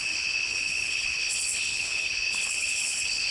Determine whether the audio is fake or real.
fake